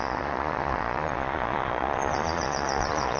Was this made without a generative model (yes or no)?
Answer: no